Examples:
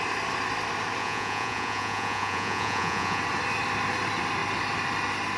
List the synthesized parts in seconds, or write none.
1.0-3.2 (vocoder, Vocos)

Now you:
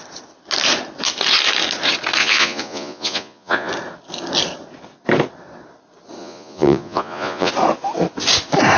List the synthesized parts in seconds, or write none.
2.2-3.7 (vocoder, Vocos); 6.2-7.5

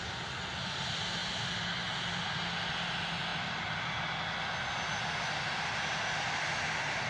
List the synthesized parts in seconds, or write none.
none

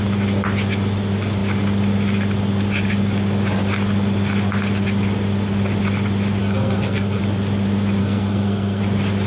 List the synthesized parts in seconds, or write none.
6.4-7.2 (codec, SNAC); 8.0-8.8

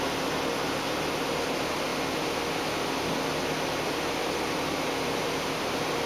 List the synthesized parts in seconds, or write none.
none

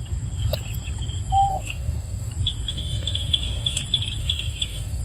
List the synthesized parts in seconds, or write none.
1.5-2.3 (codec, DAC); 2.7-3.8; 4.2-5.0

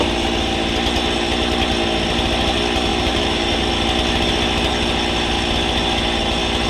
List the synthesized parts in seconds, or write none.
2.9-3.7 (vocoder, BigVGAN v2)